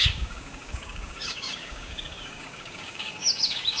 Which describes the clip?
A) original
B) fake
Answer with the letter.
B